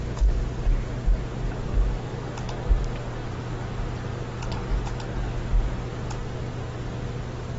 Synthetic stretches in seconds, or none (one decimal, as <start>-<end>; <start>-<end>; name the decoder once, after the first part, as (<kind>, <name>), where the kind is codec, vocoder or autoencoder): none